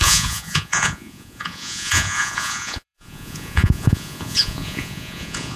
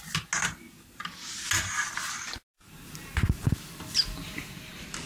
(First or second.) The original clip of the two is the second